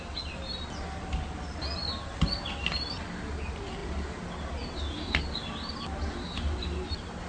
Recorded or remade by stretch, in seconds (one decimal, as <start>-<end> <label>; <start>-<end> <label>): 0.0-7.3 recorded